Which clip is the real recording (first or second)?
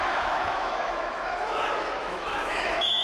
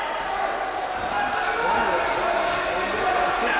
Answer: second